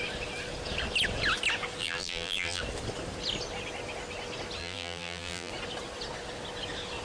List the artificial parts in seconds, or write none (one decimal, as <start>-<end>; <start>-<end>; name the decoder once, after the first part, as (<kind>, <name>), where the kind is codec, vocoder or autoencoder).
1.8-2.6 (vocoder, BigVGAN v2); 4.6-5.5